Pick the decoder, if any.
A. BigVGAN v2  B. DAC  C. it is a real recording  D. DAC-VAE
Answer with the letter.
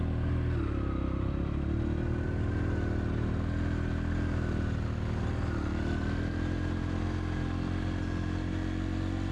C